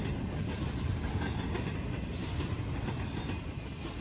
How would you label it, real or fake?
real